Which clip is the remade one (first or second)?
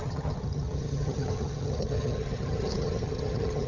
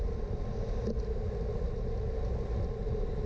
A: first